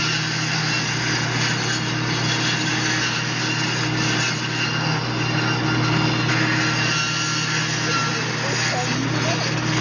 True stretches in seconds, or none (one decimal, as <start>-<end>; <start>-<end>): 0.0-9.8